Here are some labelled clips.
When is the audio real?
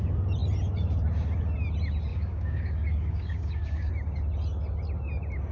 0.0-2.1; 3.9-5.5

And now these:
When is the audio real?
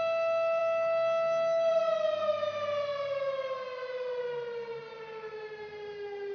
0.0-6.3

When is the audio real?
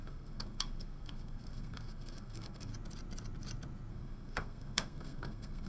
2.7-3.9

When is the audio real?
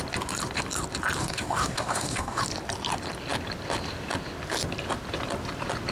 0.0-1.2; 2.4-5.9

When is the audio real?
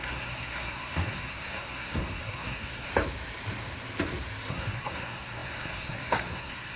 2.9-4.5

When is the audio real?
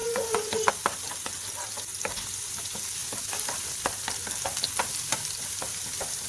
0.7-6.3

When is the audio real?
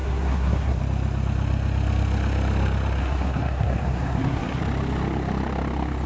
0.8-3.0; 4.6-6.1